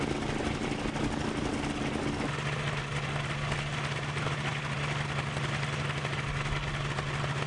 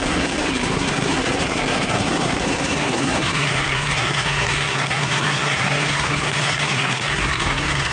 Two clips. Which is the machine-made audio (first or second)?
second